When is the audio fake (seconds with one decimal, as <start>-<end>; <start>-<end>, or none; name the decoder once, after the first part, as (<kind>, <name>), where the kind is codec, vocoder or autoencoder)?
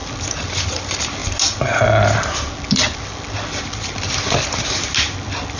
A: none